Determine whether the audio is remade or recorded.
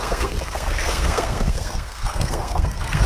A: remade